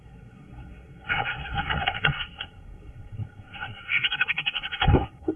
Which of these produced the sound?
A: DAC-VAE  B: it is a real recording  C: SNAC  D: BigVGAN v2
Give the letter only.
C